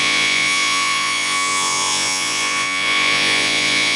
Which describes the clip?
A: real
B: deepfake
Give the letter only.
B